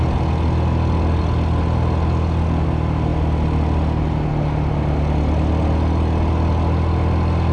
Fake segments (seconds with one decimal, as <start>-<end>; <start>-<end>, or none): none